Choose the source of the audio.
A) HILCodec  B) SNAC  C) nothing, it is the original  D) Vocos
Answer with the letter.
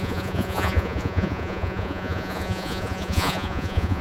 D